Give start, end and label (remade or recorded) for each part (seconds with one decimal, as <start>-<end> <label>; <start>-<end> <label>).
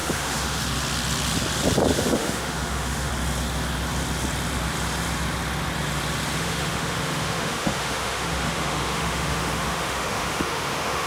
0.0-0.6 remade; 0.6-1.9 recorded; 1.9-3.1 remade; 3.1-6.4 recorded; 6.4-11.1 remade